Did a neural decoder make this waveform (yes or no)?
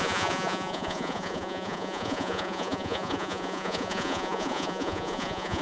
yes